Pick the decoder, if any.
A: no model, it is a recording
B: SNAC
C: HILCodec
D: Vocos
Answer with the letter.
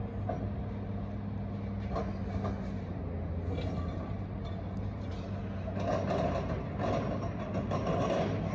A